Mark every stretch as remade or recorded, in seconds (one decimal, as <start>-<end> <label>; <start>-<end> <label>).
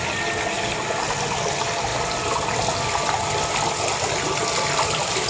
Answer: 0.0-1.9 recorded; 1.9-2.6 remade; 2.6-5.3 recorded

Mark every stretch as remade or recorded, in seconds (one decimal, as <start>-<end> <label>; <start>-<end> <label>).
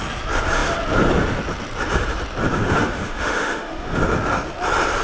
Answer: 0.0-2.5 recorded; 2.5-4.0 remade; 4.0-5.0 recorded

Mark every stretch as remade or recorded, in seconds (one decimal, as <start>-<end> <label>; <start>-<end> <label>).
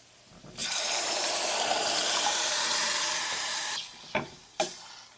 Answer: 0.0-0.6 recorded; 0.6-1.3 remade; 1.3-2.0 recorded; 2.0-3.8 remade; 3.8-5.2 recorded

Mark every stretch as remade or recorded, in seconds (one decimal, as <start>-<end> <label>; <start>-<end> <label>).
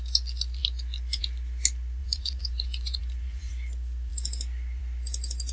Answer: 0.0-2.0 recorded; 2.0-3.5 remade; 3.5-5.5 recorded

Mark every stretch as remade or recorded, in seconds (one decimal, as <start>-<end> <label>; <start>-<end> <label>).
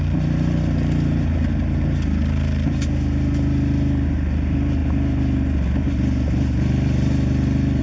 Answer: 0.0-7.8 recorded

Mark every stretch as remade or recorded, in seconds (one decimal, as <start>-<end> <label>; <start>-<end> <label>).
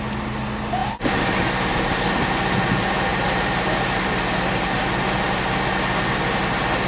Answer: 0.0-0.8 recorded; 0.8-1.4 remade; 1.4-3.1 recorded; 3.1-4.8 remade; 4.8-6.9 recorded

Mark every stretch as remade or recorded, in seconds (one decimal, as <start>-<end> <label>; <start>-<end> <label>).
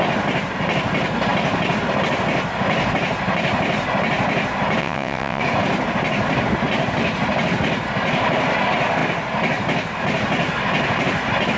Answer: 0.0-4.8 recorded; 4.8-5.4 remade; 5.4-11.6 recorded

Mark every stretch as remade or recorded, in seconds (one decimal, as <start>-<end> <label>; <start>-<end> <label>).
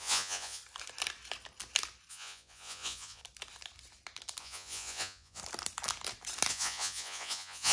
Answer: 0.0-0.6 remade; 0.6-2.1 recorded; 2.1-3.2 remade; 3.2-4.4 recorded; 4.4-5.4 remade; 5.4-6.5 recorded; 6.5-7.7 remade